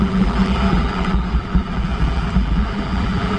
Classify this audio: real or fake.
fake